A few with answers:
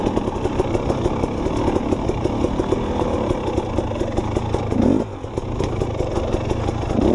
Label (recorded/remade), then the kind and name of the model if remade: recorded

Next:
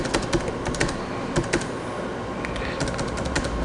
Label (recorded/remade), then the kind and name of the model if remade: recorded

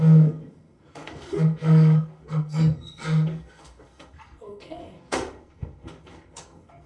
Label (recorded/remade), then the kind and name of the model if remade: remade, codec, SNAC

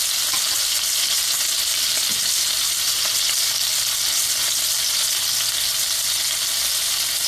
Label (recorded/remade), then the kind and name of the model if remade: recorded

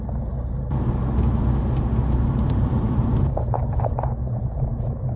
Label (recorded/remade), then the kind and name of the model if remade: recorded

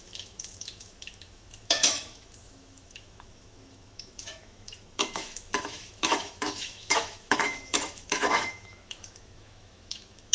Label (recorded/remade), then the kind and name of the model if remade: remade, autoencoder, DAC-VAE